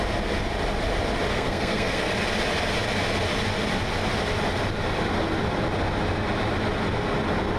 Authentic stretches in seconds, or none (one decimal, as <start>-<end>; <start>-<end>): 0.0-1.3; 2.1-7.6